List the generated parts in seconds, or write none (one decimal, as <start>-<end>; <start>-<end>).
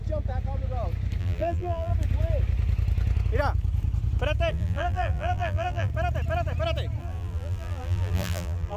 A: 1.2-1.9; 4.5-5.9; 7.0-8.8